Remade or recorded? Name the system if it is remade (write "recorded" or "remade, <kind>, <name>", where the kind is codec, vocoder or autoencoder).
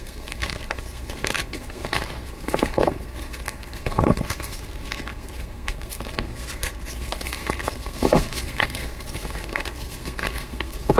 remade, codec, SNAC